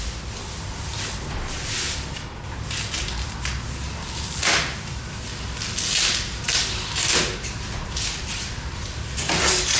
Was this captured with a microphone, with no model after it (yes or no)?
yes